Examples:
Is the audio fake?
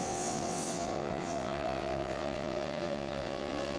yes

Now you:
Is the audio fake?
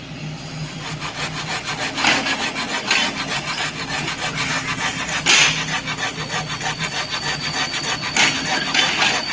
no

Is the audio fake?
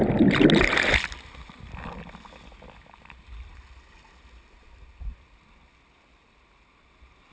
no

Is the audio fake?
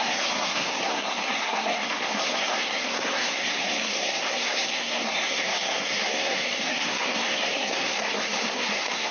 yes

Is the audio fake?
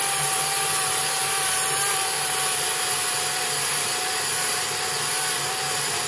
no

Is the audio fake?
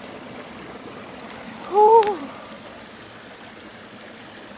no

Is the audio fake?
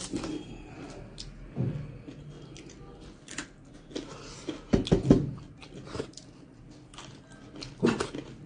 no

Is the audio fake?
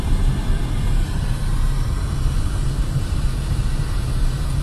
no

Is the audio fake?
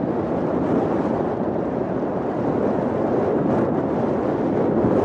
no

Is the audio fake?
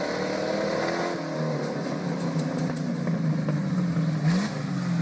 no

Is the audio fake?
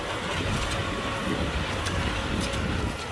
no